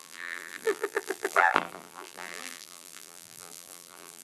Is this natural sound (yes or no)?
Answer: no